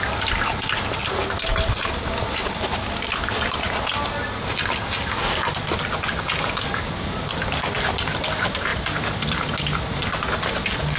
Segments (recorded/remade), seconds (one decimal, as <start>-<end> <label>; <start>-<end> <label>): 0.0-8.7 recorded; 8.7-11.0 remade